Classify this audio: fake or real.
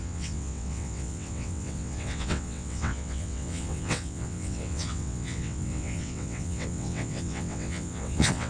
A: fake